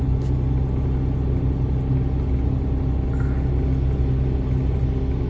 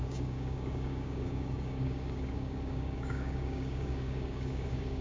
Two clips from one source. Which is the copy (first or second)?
second